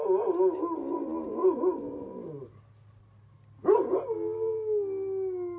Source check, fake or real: real